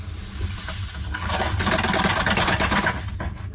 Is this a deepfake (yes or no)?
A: no